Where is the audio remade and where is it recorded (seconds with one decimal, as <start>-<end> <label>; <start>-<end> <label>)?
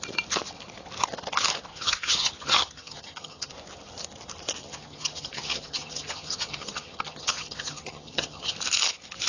0.0-1.7 recorded; 1.7-3.5 remade; 3.5-4.6 recorded; 4.6-8.5 remade; 8.5-9.3 recorded